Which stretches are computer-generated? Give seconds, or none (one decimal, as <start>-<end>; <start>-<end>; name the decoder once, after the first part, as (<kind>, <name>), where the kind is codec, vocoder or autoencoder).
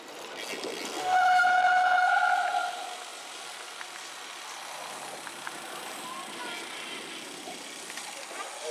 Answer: 1.0-2.1 (autoencoder, DAC-VAE)